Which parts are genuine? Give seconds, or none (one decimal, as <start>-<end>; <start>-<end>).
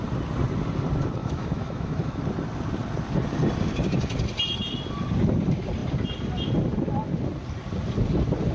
0.0-1.2; 2.2-8.5